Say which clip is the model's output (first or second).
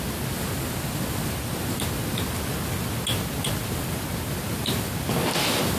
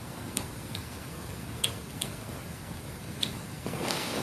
second